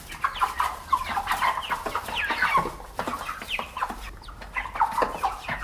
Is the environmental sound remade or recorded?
recorded